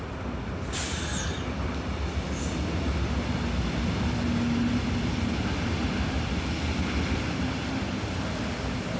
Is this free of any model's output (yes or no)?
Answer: yes